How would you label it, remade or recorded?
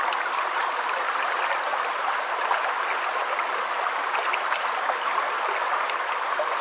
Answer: recorded